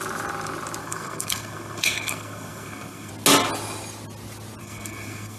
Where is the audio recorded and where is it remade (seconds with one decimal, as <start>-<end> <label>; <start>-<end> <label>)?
0.0-0.8 recorded; 0.8-3.1 remade; 3.1-4.6 recorded; 4.6-5.4 remade